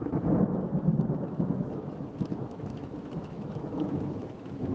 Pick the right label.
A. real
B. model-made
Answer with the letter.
B